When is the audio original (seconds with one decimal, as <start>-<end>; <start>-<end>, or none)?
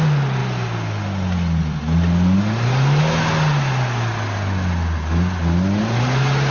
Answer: 0.0-6.5